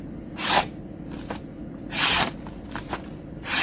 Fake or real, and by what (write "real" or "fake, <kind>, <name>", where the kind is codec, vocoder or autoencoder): real